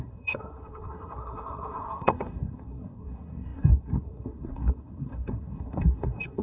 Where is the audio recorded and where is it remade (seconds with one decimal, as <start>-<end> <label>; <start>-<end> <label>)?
0.0-6.4 remade